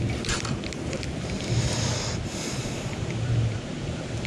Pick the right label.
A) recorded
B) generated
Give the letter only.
B